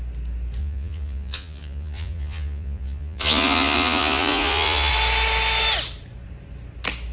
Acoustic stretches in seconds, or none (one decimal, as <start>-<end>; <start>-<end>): 0.0-0.6; 4.9-7.1